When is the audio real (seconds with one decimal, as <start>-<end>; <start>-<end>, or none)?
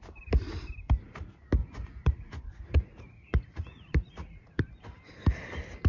0.0-1.6; 4.6-5.9